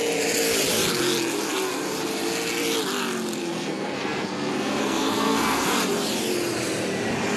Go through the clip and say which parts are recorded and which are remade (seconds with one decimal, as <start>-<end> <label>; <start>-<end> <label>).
0.0-3.4 recorded; 3.4-5.8 remade; 5.8-7.4 recorded